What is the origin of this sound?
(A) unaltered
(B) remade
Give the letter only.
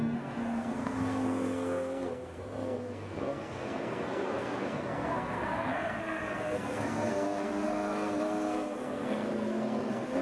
B